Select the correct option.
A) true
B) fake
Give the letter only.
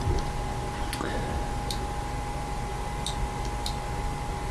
A